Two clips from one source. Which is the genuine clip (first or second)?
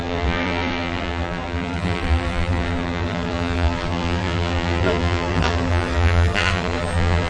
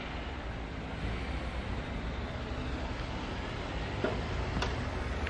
second